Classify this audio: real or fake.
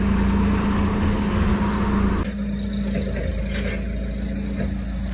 real